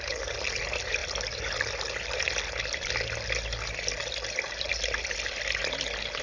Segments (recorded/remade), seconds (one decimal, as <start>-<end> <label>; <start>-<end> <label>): 0.0-6.2 recorded

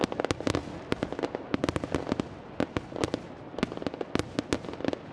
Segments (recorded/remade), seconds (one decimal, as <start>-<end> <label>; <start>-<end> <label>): 0.0-5.1 recorded

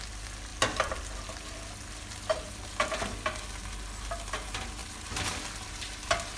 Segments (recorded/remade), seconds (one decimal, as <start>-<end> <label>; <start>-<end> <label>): 0.0-6.4 recorded

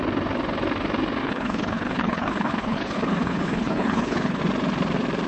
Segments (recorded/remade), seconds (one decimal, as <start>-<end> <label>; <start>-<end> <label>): 0.0-1.2 recorded; 1.2-4.4 remade; 4.4-5.3 recorded